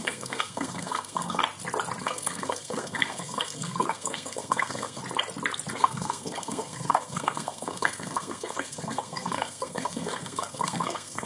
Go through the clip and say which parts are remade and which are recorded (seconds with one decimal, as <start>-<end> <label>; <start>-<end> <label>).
0.0-1.4 remade; 1.4-2.0 recorded; 2.0-5.0 remade; 5.0-5.7 recorded; 5.7-11.3 remade